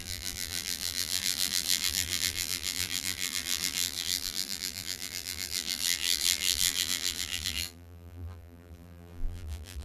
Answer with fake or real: fake